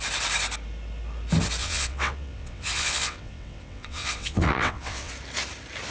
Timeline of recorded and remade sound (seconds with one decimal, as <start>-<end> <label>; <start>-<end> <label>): 0.0-1.6 recorded; 1.6-5.1 remade; 5.1-5.9 recorded